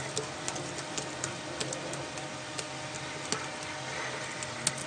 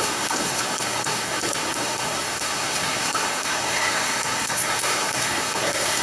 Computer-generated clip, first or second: second